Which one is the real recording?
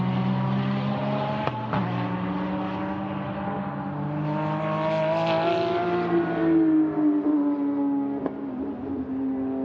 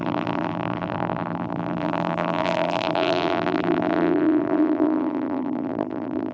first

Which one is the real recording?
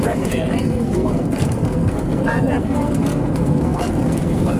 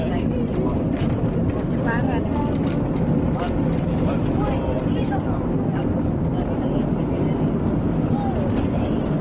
second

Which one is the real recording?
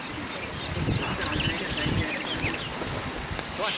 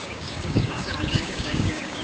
first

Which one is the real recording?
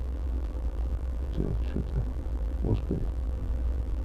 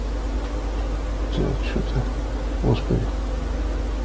second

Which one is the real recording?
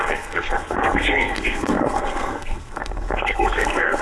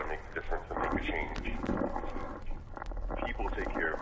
second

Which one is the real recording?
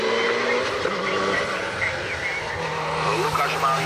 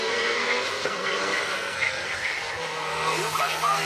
first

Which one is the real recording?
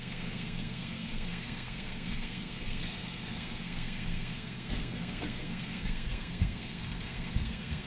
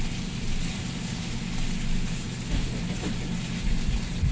second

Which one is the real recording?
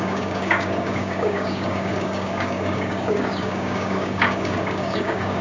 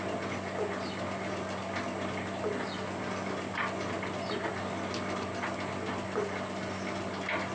second